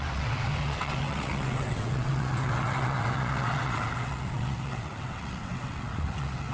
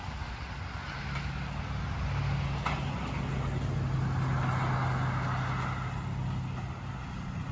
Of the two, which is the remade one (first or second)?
first